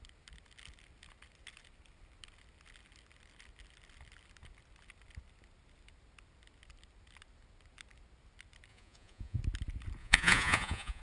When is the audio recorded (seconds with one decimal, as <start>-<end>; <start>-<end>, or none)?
0.0-8.7; 9.4-10.0